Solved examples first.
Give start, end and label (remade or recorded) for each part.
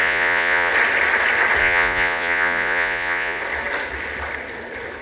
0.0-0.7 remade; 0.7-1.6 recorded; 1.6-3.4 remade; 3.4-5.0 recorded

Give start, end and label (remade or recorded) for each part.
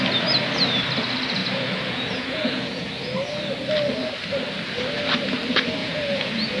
0.0-1.4 recorded; 1.4-2.9 remade; 2.9-5.8 recorded; 5.8-6.6 remade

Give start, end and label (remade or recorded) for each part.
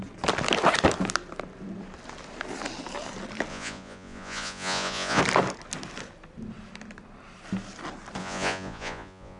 0.0-3.5 recorded; 3.5-5.2 remade; 5.2-8.2 recorded; 8.2-9.4 remade